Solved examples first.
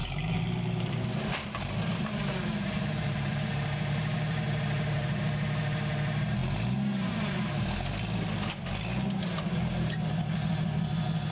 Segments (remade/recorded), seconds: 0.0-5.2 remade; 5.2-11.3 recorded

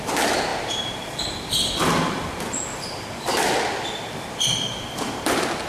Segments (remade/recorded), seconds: 0.0-5.7 remade

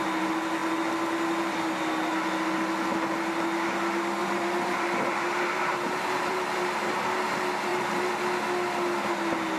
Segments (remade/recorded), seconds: 0.0-4.2 recorded; 4.2-7.0 remade; 7.0-7.7 recorded; 7.7-8.2 remade; 8.2-9.6 recorded

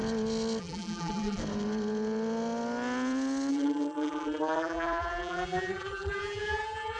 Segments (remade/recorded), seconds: 0.0-0.6 recorded; 0.6-1.4 remade; 1.4-3.5 recorded; 3.5-7.0 remade

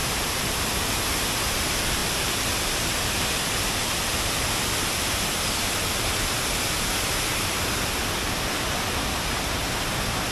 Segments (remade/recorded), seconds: 0.0-0.6 remade; 0.6-2.0 recorded; 2.0-3.0 remade; 3.0-7.3 recorded; 7.3-8.0 remade; 8.0-10.3 recorded

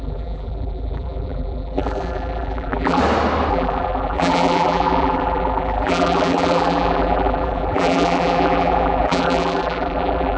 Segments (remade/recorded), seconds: 0.0-3.0 remade; 3.0-3.5 recorded; 3.5-10.4 remade

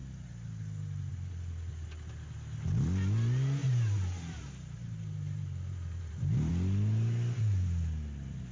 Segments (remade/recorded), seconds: 0.0-3.6 recorded; 3.6-6.5 remade; 6.5-8.5 recorded

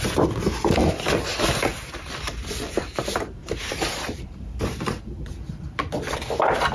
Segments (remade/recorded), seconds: 0.0-1.3 recorded; 1.3-5.3 remade; 5.3-6.7 recorded